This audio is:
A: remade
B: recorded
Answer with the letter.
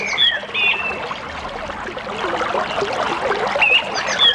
B